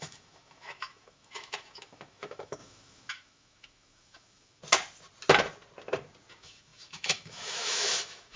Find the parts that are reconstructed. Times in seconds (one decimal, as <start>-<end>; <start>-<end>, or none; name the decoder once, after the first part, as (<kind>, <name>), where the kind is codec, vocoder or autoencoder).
0.0-4.6 (autoencoder, DAC-VAE); 6.3-8.4